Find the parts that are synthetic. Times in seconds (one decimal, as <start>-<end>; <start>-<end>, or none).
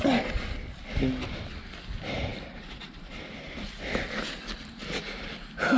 none